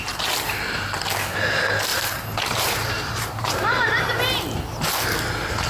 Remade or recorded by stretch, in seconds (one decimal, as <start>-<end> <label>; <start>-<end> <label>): 0.0-1.9 recorded; 1.9-4.1 remade; 4.1-5.7 recorded